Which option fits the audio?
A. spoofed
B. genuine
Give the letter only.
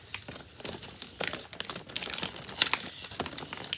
B